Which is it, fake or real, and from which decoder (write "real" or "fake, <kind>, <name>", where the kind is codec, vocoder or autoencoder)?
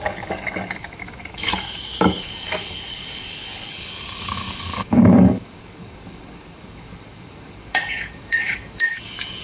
fake, codec, DAC